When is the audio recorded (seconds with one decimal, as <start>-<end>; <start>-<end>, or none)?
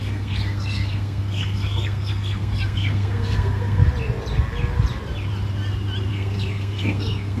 3.8-6.1